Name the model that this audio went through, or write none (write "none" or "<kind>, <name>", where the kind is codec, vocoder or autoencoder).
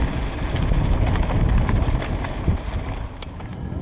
none